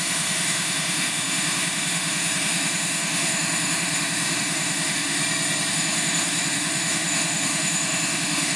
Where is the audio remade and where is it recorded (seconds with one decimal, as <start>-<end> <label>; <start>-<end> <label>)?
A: 0.0-5.2 remade; 5.2-5.7 recorded; 5.7-8.6 remade